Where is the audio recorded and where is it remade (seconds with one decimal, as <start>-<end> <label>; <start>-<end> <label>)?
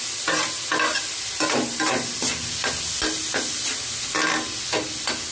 0.0-5.3 recorded